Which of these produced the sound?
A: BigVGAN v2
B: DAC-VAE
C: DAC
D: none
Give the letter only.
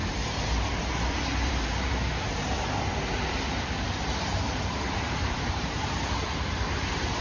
A